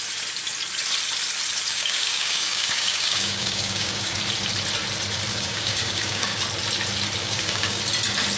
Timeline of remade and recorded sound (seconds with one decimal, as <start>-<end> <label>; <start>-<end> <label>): 0.0-1.7 recorded; 1.7-4.2 remade; 4.2-5.3 recorded; 5.3-6.4 remade; 6.4-7.2 recorded; 7.2-7.8 remade; 7.8-8.4 recorded